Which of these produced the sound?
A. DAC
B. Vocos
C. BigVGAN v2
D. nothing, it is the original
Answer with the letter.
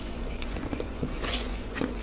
B